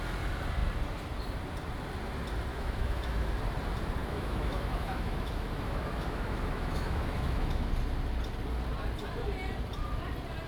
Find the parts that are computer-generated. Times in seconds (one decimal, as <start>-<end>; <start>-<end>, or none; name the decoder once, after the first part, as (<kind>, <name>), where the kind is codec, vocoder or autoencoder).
2.5-3.3 (autoencoder, DAC-VAE); 4.0-7.7